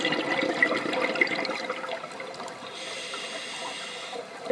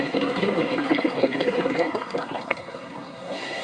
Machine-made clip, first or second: second